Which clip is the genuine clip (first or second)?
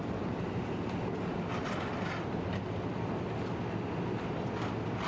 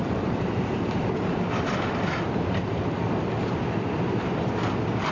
first